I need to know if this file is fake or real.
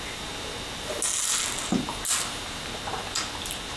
real